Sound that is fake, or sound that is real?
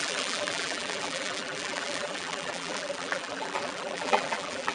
fake